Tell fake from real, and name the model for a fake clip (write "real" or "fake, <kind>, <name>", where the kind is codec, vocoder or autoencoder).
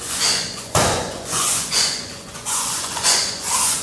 fake, vocoder, Vocos